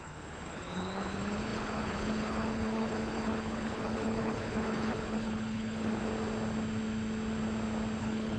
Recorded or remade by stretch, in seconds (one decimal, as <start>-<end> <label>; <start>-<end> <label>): 0.0-6.0 remade; 6.0-8.0 recorded; 8.0-8.4 remade

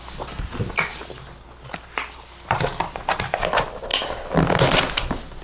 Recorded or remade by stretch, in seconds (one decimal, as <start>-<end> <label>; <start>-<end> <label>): 0.0-5.4 recorded